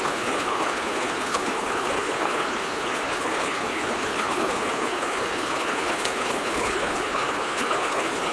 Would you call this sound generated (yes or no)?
yes